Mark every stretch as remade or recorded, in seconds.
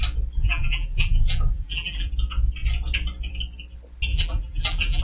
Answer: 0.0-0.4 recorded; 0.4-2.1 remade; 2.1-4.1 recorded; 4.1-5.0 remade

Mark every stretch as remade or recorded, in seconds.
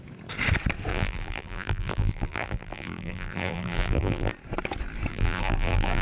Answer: 0.0-0.9 recorded; 0.9-4.3 remade; 4.3-5.1 recorded; 5.1-6.0 remade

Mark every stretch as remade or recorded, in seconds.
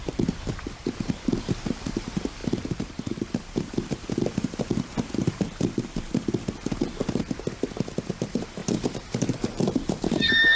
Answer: 0.0-7.0 remade; 7.0-8.1 recorded; 8.1-8.6 remade; 8.6-9.3 recorded; 9.3-10.6 remade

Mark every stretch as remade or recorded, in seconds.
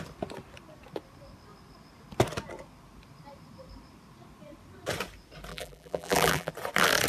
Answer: 0.0-5.5 recorded; 5.5-6.5 remade; 6.5-7.1 recorded